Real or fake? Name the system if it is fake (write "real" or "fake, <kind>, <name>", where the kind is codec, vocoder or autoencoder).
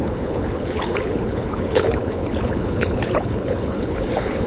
fake, codec, HILCodec